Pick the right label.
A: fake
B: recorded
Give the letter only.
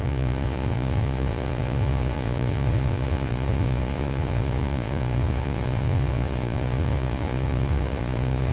A